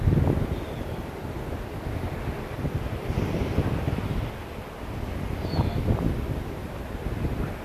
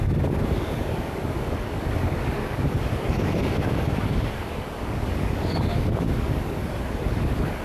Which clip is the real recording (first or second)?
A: first